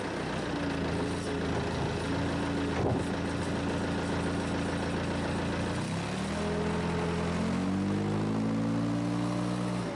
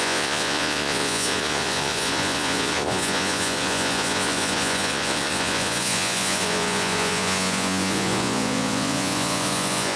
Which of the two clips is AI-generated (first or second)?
second